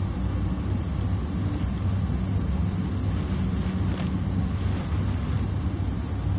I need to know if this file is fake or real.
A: real